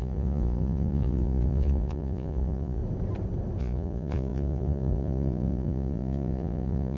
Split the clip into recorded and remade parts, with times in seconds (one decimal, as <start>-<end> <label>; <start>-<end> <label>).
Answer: 0.0-2.8 remade; 2.8-3.6 recorded; 3.6-7.0 remade